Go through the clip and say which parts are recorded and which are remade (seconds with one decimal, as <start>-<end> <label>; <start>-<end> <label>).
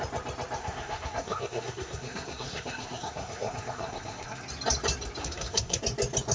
0.0-0.6 recorded; 0.6-4.4 remade; 4.4-5.2 recorded; 5.2-5.8 remade; 5.8-6.3 recorded